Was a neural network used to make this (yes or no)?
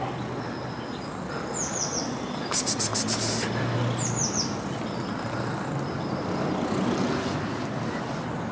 no